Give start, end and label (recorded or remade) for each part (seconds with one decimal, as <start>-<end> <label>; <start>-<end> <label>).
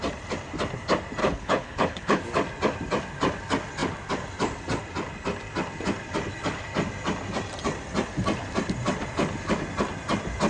0.0-1.2 recorded; 1.2-2.2 remade; 2.2-10.5 recorded